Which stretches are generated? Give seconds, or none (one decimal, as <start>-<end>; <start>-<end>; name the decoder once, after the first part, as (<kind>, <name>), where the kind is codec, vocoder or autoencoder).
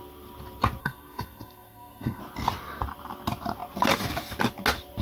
0.8-2.2 (codec, SNAC)